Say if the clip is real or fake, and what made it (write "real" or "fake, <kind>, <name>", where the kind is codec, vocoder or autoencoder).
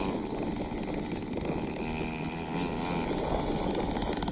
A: real